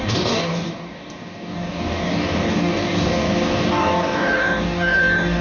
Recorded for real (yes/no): no